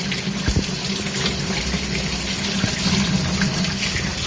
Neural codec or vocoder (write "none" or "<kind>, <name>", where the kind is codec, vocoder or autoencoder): none